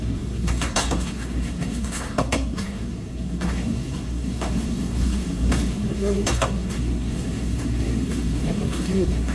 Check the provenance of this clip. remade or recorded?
remade